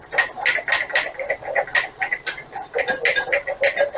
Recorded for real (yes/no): yes